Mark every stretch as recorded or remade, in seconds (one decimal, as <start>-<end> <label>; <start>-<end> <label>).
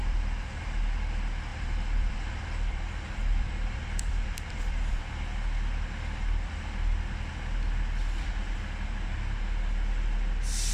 0.0-0.8 remade; 0.8-1.5 recorded; 1.5-5.0 remade; 5.0-10.7 recorded